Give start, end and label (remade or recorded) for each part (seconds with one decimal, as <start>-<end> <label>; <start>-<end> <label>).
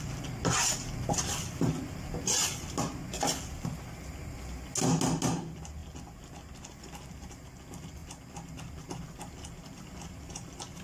0.0-10.8 recorded